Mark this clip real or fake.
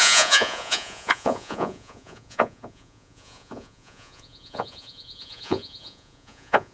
fake